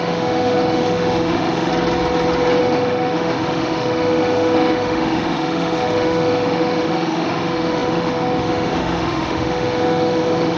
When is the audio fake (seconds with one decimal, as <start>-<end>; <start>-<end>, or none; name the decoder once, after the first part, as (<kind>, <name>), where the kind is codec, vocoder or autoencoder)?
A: 0.0-1.7 (autoencoder, DAC-VAE); 2.6-10.6